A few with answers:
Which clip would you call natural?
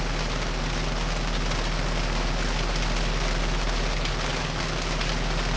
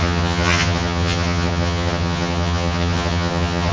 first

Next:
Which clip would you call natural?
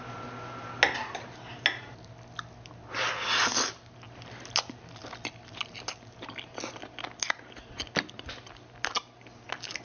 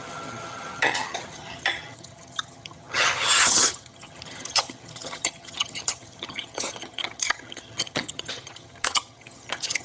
first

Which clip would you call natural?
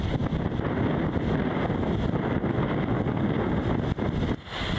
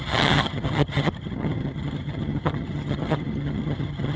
first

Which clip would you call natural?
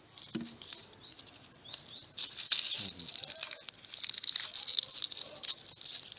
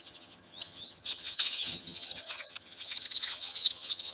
first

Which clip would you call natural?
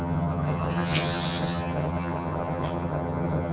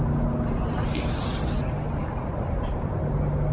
second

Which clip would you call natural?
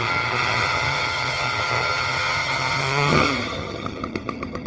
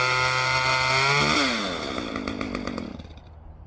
second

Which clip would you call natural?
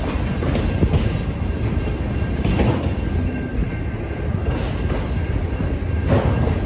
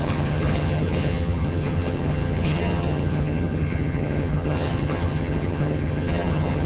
first